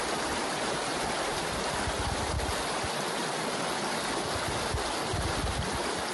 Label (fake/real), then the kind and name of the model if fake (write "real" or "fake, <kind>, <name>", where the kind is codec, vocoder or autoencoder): real